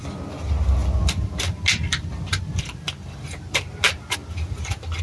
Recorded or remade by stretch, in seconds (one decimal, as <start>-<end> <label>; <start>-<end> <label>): 0.0-5.0 recorded